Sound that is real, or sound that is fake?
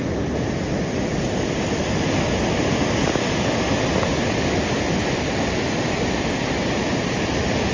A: real